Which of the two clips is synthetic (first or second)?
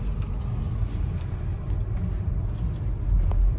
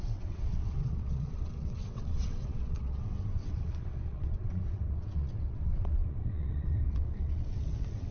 second